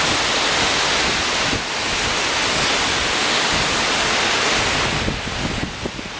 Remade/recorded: recorded